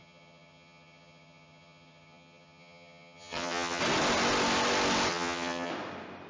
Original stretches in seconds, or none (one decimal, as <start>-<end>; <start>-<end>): 3.8-5.1; 5.7-6.3